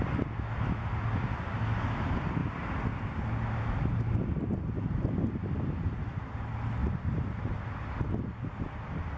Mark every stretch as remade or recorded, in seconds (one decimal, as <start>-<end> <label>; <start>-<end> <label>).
0.0-9.2 recorded